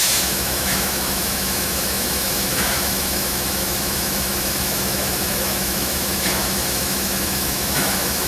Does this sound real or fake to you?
fake